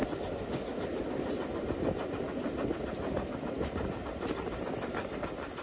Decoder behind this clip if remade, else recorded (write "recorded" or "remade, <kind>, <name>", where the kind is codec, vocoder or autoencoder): recorded